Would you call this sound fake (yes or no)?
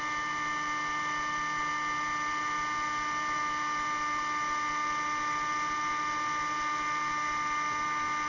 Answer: no